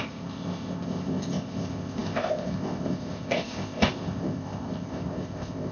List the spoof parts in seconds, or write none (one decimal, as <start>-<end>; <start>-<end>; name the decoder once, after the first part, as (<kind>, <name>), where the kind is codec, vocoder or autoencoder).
0.0-5.7 (codec, ZipCodec)